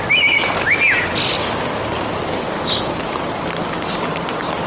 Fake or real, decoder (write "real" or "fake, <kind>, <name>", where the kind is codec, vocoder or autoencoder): real